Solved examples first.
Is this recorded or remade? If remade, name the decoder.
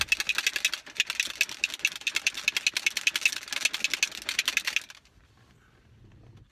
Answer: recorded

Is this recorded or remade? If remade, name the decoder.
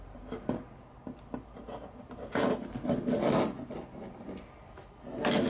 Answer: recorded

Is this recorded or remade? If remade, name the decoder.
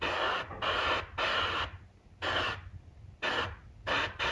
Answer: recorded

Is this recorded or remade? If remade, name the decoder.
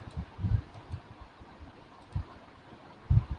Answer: recorded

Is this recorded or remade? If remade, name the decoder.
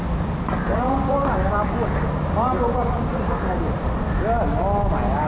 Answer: recorded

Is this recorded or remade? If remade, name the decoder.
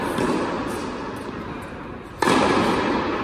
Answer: recorded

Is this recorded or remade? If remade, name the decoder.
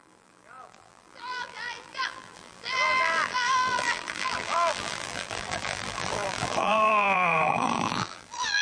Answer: remade, vocoder, BigVGAN v2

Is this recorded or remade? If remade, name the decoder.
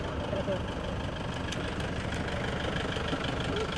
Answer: recorded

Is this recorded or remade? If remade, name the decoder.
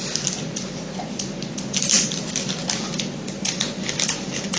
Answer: recorded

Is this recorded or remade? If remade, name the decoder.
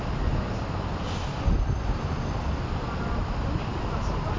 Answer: recorded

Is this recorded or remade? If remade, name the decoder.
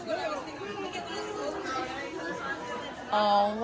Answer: recorded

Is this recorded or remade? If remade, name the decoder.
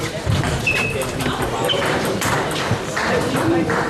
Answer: remade, vocoder, BigVGAN v2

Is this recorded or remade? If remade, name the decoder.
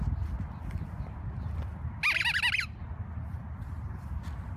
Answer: recorded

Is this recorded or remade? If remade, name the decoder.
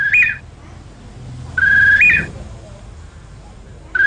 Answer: recorded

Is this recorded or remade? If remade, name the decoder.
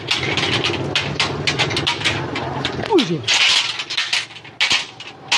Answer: recorded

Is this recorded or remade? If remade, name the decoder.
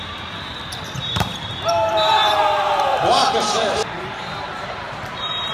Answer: remade, vocoder, BigVGAN v2